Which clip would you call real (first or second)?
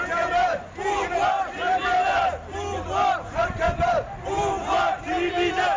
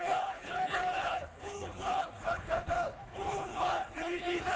first